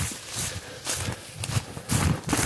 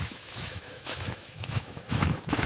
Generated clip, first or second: second